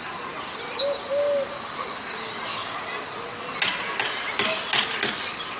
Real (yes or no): yes